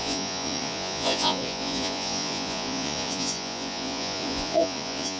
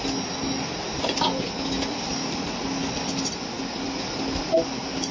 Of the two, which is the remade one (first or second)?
first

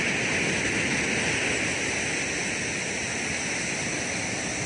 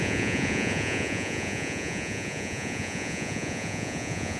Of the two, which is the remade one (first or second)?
second